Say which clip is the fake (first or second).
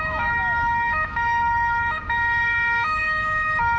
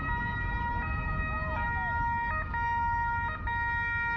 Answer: first